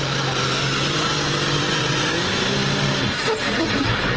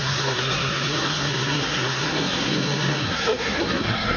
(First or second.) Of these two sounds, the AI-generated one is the second